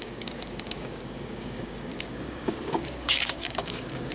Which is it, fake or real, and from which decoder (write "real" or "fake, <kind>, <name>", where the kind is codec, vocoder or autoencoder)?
fake, codec, DAC